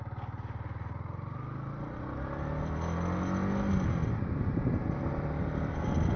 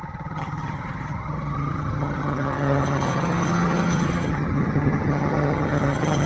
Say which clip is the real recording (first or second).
first